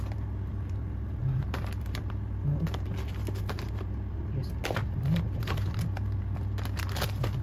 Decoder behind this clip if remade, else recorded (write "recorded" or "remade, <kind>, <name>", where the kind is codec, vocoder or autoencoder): recorded